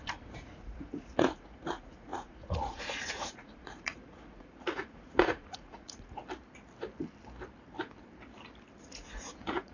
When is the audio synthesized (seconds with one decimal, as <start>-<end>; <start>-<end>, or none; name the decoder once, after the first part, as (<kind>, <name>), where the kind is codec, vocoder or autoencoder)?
0.0-6.2 (vocoder, Vocos); 8.8-9.7